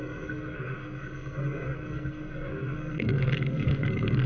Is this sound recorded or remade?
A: remade